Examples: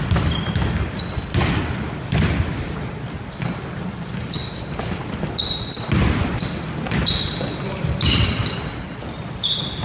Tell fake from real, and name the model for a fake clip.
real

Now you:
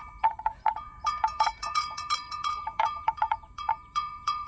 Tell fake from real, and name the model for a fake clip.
fake, vocoder, Vocos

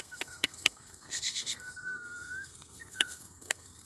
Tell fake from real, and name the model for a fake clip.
fake, codec, SNAC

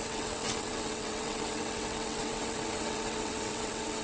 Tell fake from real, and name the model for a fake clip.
fake, vocoder, WaveNeXt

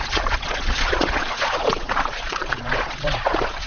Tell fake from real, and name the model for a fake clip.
fake, vocoder, Vocos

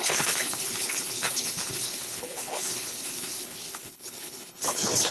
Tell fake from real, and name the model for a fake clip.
fake, codec, HILCodec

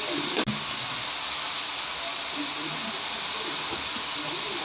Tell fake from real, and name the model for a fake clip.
real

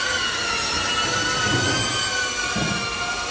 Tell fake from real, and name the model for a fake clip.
real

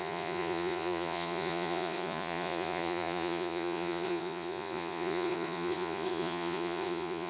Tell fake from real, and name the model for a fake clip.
fake, vocoder, Vocos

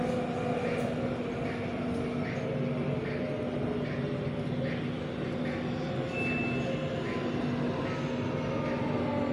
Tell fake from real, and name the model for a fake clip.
real